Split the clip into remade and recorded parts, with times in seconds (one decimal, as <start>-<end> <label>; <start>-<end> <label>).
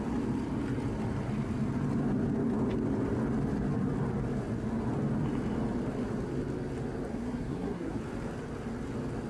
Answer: 0.0-7.1 recorded; 7.1-8.0 remade; 8.0-9.3 recorded